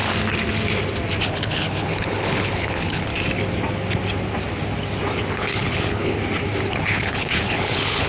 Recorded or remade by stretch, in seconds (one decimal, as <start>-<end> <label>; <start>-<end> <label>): 0.0-1.2 recorded; 1.2-3.1 remade; 3.1-5.3 recorded; 5.3-6.1 remade; 6.1-6.7 recorded; 6.7-8.1 remade